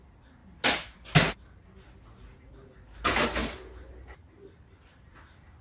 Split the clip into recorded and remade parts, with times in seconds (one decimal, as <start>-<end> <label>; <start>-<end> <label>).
0.0-5.6 recorded